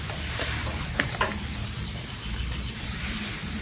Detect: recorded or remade remade